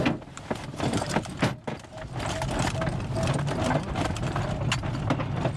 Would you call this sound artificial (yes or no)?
no